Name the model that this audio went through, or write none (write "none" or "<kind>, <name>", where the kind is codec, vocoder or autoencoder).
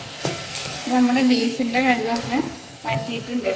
codec, SNAC